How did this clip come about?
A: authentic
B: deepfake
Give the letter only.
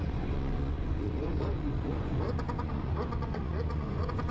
B